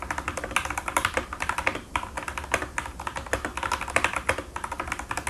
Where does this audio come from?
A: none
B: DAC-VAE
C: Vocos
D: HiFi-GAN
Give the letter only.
A